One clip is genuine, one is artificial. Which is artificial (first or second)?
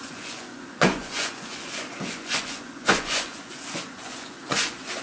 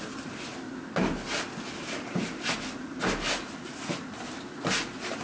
first